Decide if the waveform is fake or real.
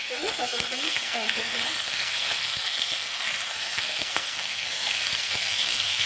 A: fake